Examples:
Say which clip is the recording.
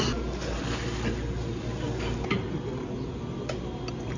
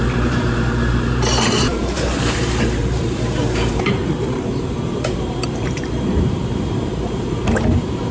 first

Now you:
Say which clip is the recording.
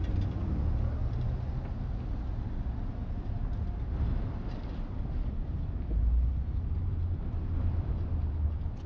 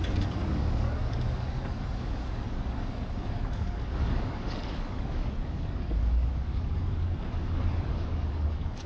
first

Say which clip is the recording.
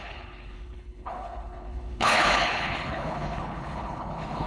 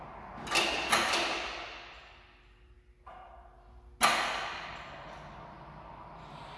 second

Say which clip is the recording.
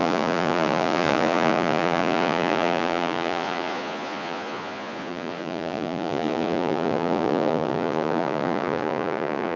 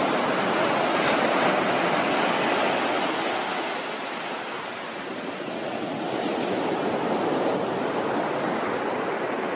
second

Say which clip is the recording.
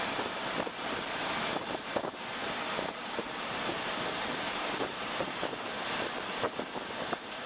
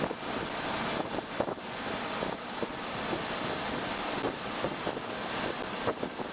second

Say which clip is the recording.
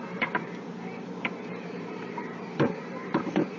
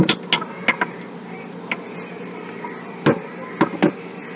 second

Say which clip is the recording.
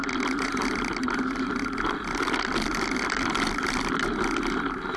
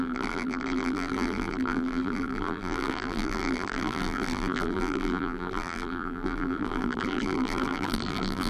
first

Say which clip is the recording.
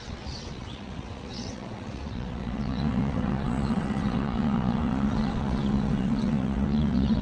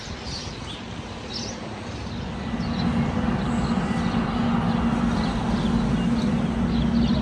second